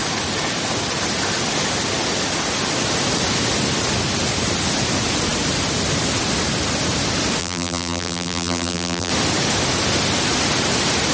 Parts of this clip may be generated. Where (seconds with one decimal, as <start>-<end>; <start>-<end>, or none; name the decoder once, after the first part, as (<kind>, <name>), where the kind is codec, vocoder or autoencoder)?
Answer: 7.4-9.1 (vocoder, BigVGAN v2)